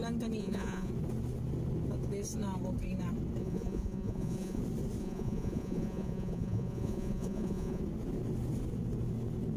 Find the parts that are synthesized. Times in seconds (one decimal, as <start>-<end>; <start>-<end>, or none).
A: 0.4-0.9; 3.4-4.6; 5.0-7.8